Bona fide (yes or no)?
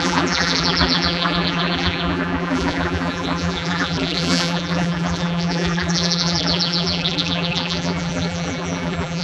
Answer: no